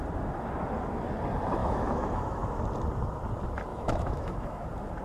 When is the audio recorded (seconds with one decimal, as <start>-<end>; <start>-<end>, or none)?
0.0-1.6; 2.6-3.7; 4.6-5.0